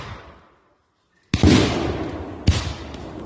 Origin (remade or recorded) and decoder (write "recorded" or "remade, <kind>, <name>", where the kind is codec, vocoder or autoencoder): recorded